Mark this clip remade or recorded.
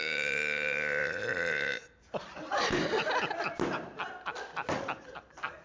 remade